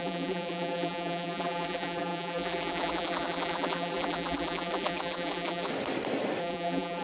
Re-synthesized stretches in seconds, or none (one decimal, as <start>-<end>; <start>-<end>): 0.0-5.7; 6.4-7.0